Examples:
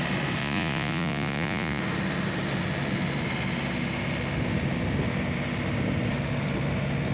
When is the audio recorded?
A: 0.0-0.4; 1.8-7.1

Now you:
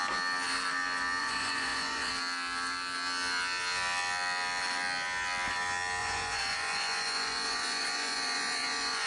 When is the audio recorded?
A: 0.0-1.2; 2.1-6.0

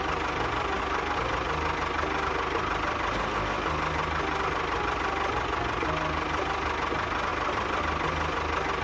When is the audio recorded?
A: 0.0-7.3; 7.8-8.8

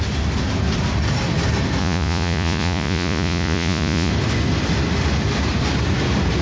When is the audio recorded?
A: 0.0-1.8; 4.1-6.4

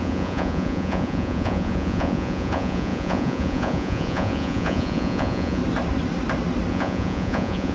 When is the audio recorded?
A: 5.6-6.7

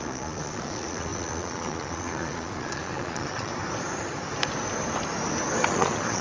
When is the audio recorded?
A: 3.5-5.7

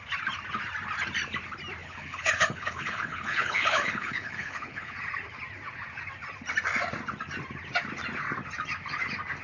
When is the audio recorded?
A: 0.0-1.8; 4.9-9.4